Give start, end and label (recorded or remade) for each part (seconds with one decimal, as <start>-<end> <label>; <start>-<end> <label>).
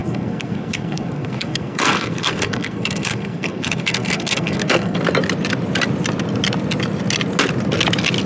0.0-5.0 remade; 5.0-8.3 recorded